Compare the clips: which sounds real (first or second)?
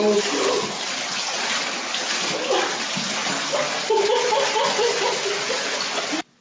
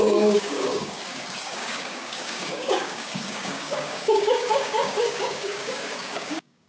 first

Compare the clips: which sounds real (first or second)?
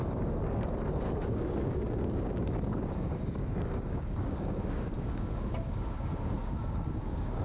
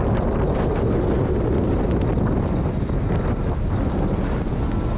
second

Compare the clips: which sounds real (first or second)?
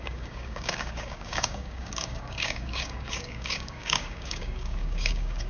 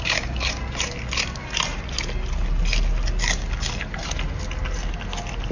second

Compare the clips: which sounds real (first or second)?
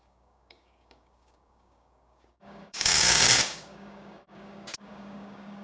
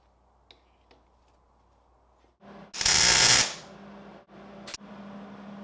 second